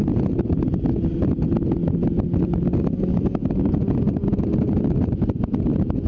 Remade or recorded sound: recorded